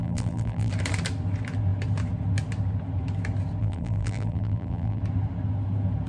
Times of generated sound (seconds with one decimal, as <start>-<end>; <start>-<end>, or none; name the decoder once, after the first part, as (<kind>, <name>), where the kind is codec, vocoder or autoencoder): 0.0-0.7 (vocoder, BigVGAN v2); 3.6-5.0